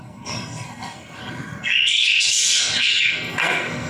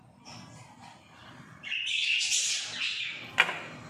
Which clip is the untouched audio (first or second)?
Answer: second